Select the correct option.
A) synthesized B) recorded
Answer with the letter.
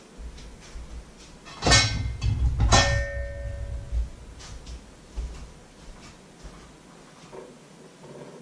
B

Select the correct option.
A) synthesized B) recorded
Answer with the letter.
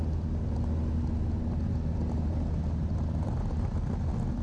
B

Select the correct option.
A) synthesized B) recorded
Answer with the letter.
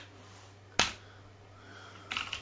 B